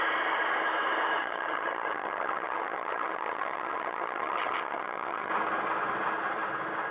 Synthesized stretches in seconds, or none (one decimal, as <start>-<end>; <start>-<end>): 1.2-5.3